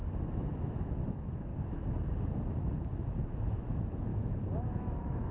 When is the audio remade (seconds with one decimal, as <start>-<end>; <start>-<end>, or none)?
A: 0.0-1.5; 3.3-4.1; 4.6-5.3